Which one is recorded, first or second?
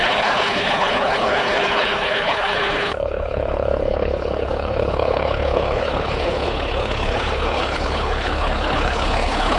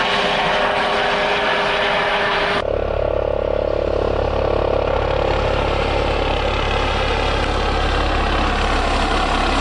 second